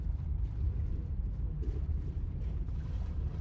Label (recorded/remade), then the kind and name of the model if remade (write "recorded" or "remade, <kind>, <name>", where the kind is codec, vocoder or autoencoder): remade, vocoder, BigVGAN v2